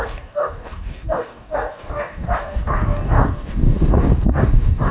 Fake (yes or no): yes